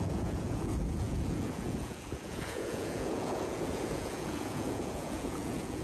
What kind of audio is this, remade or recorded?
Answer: remade